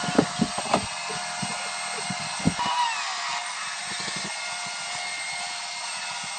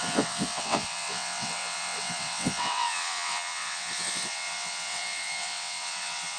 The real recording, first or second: first